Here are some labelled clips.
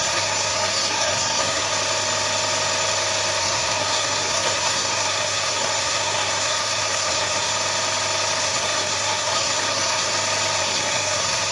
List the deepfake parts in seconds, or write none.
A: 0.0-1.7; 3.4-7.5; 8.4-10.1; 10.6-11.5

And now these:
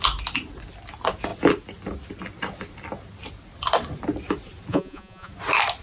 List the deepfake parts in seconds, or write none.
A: 4.7-5.3

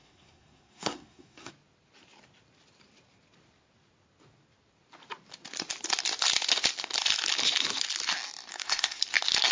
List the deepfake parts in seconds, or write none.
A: 0.0-1.5; 8.5-9.0